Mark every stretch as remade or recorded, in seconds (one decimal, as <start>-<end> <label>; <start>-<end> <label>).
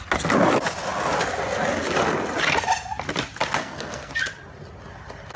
0.0-3.6 recorded; 3.6-4.1 remade; 4.1-5.4 recorded